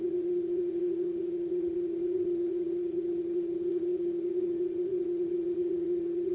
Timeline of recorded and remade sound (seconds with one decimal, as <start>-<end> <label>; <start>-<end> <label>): 0.0-6.3 remade